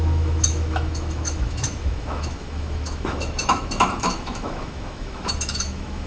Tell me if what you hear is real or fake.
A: fake